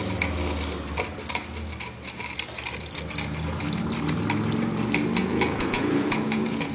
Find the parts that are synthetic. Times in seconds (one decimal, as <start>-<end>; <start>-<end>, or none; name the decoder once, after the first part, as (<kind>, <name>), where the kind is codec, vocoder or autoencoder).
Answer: 5.2-6.7 (vocoder, Vocos)